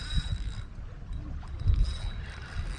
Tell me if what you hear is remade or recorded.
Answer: recorded